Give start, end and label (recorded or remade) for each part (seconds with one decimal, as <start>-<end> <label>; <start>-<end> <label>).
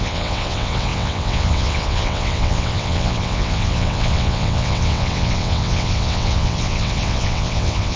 0.0-8.0 remade